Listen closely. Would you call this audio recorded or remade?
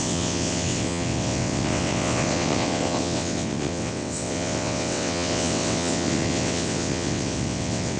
remade